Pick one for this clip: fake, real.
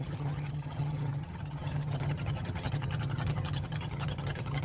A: fake